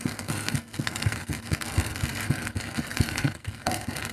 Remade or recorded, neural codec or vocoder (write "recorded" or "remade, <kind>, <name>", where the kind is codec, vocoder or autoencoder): remade, codec, SNAC